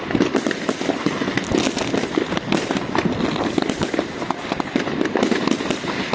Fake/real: real